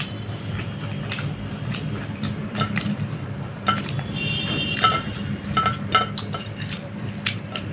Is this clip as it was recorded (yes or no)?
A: no